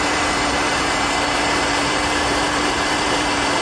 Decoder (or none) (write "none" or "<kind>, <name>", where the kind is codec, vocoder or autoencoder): vocoder, BigVGAN v2